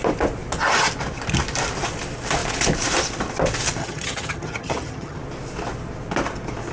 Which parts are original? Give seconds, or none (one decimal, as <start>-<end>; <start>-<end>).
0.0-3.8; 5.2-6.7